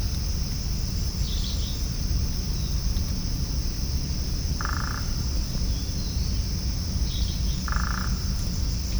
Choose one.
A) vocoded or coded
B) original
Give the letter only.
B